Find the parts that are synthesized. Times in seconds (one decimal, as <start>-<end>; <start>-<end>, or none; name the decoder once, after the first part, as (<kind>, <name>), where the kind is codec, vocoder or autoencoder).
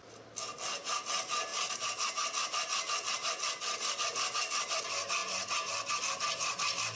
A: none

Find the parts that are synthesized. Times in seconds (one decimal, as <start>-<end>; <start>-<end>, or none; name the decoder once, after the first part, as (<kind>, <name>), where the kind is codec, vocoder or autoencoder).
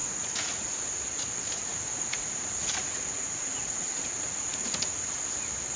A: 0.0-0.6 (vocoder, Vocos); 1.7-5.2